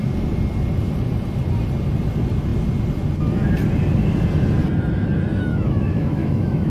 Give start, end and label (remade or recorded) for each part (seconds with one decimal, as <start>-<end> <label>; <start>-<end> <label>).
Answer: 0.0-5.5 recorded; 5.5-6.7 remade